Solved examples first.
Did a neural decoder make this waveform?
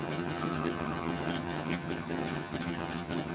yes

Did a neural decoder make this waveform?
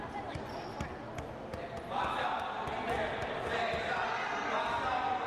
no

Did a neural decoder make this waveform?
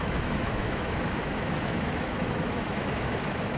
yes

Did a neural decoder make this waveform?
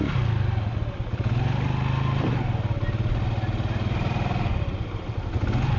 no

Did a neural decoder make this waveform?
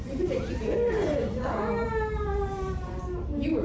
yes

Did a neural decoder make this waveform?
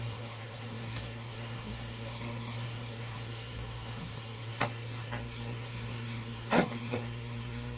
yes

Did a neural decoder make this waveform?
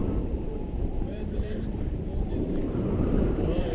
yes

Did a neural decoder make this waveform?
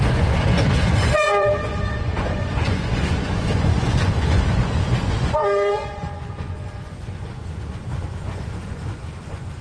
yes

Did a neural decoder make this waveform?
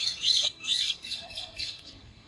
yes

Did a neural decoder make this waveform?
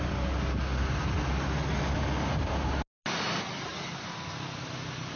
no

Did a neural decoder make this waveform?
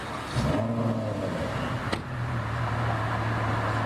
no